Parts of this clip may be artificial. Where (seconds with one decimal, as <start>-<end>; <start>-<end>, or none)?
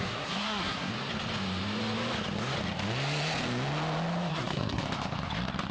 0.0-0.9; 4.3-4.8